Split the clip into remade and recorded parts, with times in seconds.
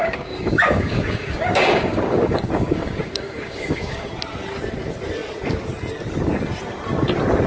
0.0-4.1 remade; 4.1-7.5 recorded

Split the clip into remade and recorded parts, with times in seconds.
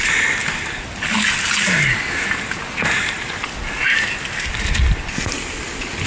0.0-6.1 recorded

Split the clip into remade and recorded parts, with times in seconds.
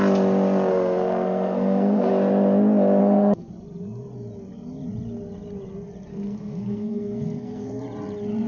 0.0-0.7 recorded; 0.7-2.1 remade; 2.1-3.0 recorded; 3.0-3.5 remade; 3.5-6.1 recorded; 6.1-7.8 remade; 7.8-8.5 recorded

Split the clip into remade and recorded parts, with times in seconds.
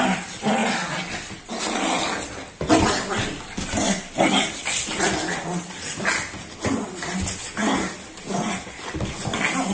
0.0-9.7 recorded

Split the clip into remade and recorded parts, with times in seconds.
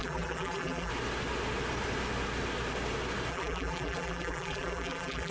0.0-0.9 remade; 0.9-3.3 recorded; 3.3-5.3 remade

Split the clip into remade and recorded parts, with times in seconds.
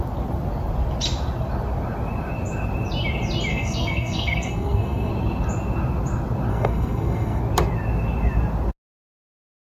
0.0-3.5 recorded; 3.5-5.1 remade; 5.1-6.5 recorded; 6.5-7.4 remade; 7.4-9.7 recorded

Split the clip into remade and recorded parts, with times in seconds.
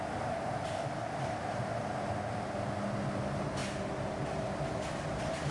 0.0-5.5 recorded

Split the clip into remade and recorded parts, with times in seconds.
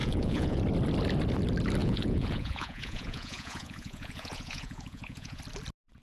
0.0-0.6 remade; 0.6-1.8 recorded; 1.8-5.4 remade; 5.4-6.0 recorded